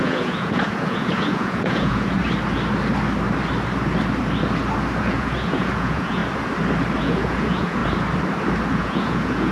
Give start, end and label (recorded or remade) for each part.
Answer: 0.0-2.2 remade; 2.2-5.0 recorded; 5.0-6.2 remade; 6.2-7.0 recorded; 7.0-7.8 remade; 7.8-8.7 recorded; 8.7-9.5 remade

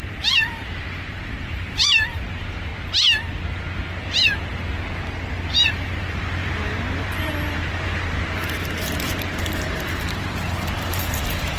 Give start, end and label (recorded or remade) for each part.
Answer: 0.0-2.7 remade; 2.7-5.7 recorded; 5.7-11.6 remade